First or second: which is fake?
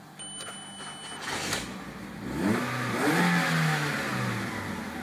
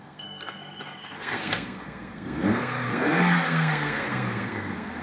second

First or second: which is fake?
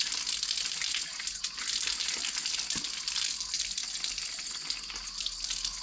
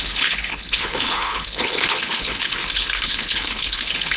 second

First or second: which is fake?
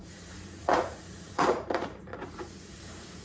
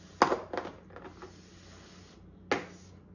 first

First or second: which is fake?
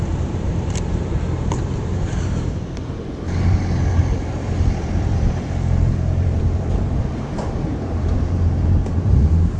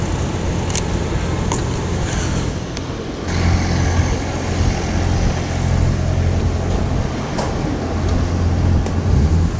first